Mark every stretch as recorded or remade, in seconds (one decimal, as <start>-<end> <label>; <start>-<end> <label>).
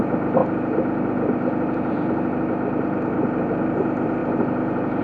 0.0-5.0 recorded